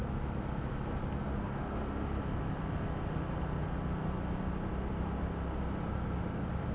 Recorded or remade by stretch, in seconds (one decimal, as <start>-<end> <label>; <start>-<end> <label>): 0.0-6.7 recorded

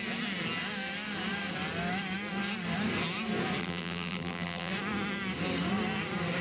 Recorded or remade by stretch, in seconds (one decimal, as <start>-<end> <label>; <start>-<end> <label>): 0.0-3.6 recorded; 3.6-4.7 remade; 4.7-6.4 recorded

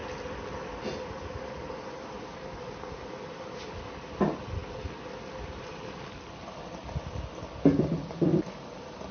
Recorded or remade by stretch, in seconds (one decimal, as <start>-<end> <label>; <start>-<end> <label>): 0.0-9.1 recorded

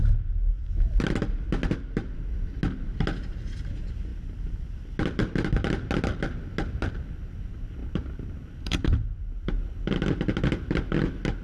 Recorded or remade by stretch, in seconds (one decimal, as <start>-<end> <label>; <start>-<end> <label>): 0.0-11.4 recorded

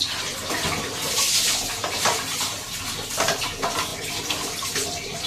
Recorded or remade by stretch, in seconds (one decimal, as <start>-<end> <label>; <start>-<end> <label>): 0.0-5.3 recorded

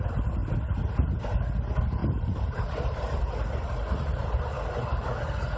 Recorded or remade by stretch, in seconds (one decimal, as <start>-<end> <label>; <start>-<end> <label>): 0.0-2.0 recorded; 2.0-4.4 remade; 4.4-5.6 recorded

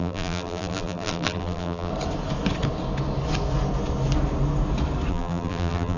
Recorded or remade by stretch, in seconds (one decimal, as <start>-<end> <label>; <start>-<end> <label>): 0.0-1.9 remade; 1.9-5.1 recorded; 5.1-6.0 remade

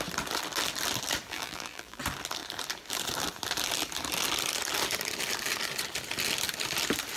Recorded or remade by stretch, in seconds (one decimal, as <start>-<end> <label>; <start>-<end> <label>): 0.0-1.3 recorded; 1.3-2.0 remade; 2.0-7.2 recorded